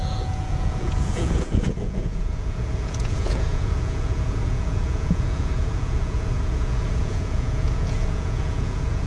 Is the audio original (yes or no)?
no